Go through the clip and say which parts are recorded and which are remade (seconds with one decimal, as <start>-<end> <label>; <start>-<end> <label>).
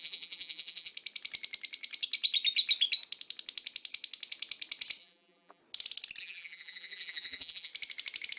0.0-0.9 remade; 0.9-5.0 recorded; 5.0-5.6 remade; 5.6-6.2 recorded; 6.2-7.7 remade; 7.7-8.4 recorded